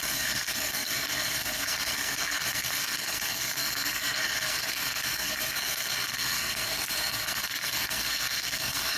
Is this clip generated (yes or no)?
yes